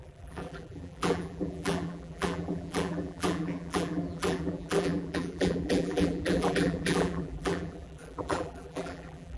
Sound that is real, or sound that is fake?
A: fake